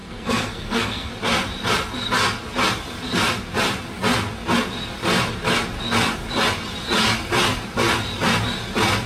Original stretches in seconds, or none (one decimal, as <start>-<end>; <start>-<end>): 1.1-9.1